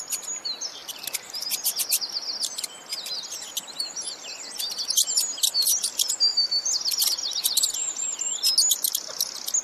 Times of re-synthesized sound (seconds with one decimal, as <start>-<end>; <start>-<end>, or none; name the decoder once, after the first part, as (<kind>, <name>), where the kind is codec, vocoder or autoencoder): none